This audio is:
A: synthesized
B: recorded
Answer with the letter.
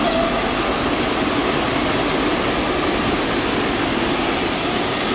B